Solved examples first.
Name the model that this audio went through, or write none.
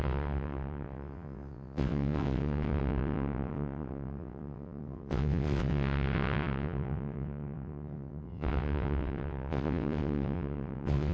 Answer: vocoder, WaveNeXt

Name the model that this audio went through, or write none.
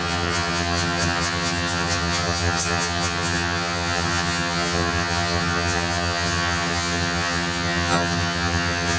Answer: vocoder, HiFi-GAN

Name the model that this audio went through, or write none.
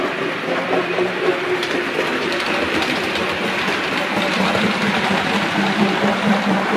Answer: vocoder, BigVGAN v2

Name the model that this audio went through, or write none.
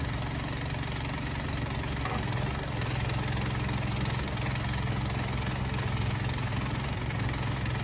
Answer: none